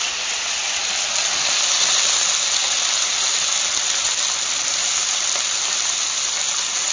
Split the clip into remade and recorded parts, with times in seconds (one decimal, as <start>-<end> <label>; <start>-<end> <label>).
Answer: 0.0-6.9 recorded